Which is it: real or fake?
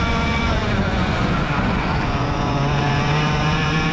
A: fake